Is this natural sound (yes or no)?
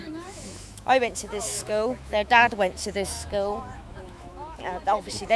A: no